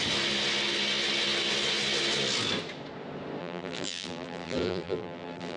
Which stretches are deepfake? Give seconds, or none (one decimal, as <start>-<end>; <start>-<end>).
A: 3.4-5.6